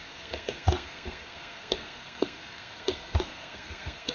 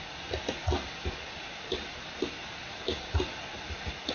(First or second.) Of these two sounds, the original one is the second